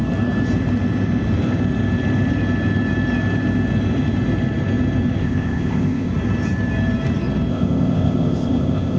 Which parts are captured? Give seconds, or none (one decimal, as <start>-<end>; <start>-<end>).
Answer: 0.0-5.2; 6.1-7.5

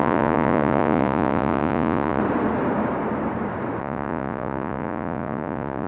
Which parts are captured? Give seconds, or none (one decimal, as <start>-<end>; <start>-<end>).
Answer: 2.2-3.8

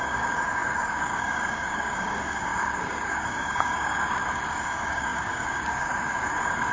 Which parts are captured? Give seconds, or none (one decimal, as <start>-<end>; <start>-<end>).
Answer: none

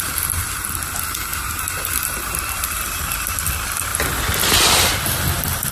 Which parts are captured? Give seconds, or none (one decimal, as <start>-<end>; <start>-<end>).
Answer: 0.0-3.9; 5.1-5.7

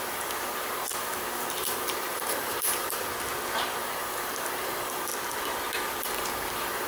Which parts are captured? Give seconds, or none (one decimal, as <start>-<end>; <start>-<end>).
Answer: 3.1-3.8; 5.1-6.0

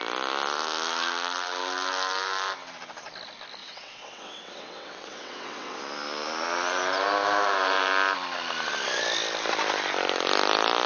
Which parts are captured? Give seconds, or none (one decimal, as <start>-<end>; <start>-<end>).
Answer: 0.0-3.6; 5.8-10.9

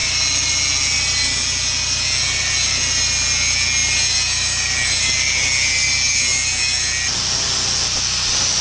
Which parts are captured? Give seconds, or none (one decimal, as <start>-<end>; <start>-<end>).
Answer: 0.0-8.6

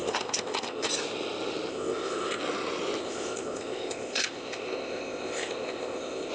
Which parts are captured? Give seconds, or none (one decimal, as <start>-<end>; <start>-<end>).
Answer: 0.9-1.7; 2.4-3.0